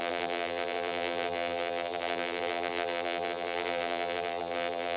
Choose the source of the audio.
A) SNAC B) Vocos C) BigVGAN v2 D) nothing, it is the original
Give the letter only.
C